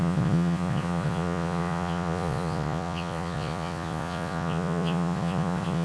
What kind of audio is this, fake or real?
fake